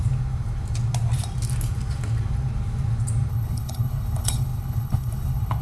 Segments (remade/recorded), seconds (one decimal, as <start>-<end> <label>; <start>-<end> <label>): 0.0-3.3 recorded; 3.3-5.6 remade